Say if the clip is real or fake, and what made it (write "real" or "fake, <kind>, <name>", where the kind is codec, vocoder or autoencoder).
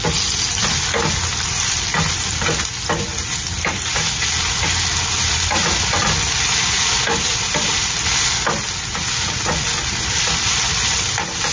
real